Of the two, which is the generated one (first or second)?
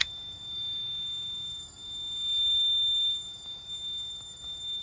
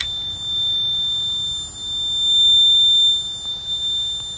first